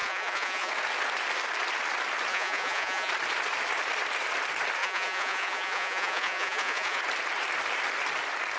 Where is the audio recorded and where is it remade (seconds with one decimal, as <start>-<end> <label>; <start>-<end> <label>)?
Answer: 0.0-0.7 remade; 0.7-2.3 recorded; 2.3-3.1 remade; 3.1-4.8 recorded; 4.8-7.0 remade; 7.0-8.6 recorded